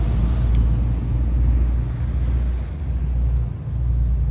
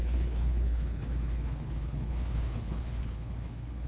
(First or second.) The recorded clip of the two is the first